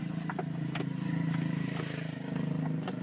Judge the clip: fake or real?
fake